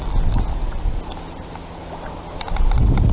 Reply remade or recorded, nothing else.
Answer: recorded